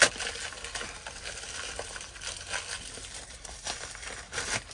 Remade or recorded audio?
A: recorded